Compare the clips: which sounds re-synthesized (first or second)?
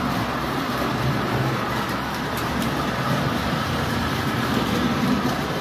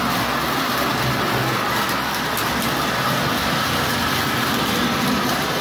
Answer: first